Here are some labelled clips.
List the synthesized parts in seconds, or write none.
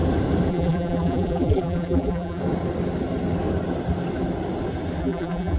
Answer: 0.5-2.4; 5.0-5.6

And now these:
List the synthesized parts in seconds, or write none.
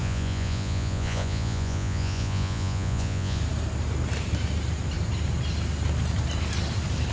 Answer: 0.0-3.4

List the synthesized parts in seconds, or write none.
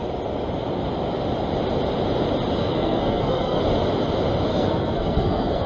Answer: 2.6-3.6; 4.5-5.7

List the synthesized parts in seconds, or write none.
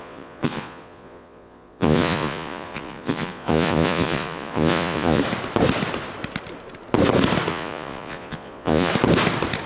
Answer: 0.0-5.2; 7.5-8.9